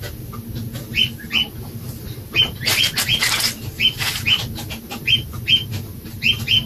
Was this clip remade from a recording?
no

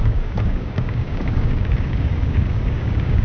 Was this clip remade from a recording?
yes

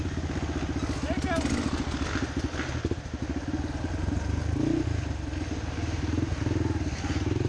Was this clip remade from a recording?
no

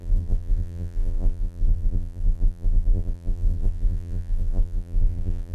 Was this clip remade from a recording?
yes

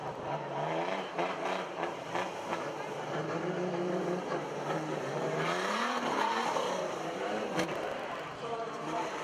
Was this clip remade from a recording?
yes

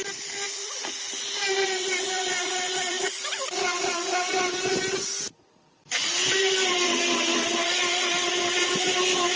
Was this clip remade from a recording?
yes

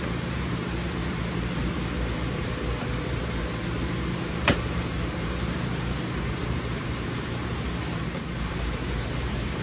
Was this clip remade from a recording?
yes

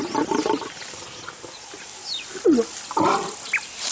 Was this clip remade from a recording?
no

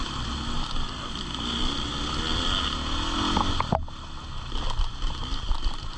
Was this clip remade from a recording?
no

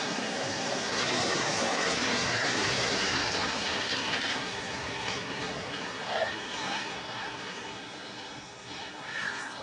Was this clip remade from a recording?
yes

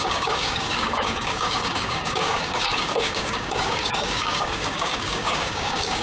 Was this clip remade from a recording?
yes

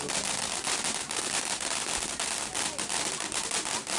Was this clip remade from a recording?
no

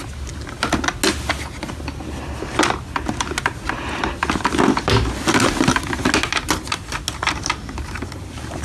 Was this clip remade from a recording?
no